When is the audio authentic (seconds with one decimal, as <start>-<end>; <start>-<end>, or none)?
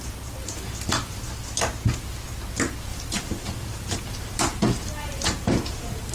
0.0-0.4; 1.3-2.9